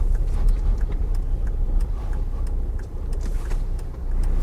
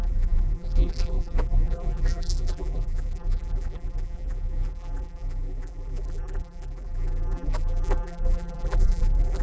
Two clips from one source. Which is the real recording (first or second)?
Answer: first